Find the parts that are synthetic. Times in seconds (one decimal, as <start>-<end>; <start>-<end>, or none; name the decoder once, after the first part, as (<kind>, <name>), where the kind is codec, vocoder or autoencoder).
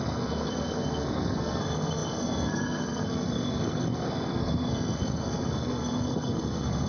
0.0-6.9 (codec, SNAC)